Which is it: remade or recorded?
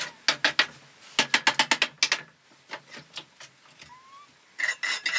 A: recorded